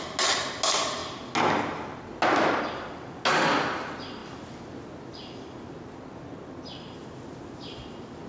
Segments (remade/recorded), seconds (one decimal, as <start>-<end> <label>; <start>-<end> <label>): 0.0-8.3 recorded